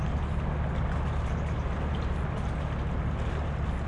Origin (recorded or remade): recorded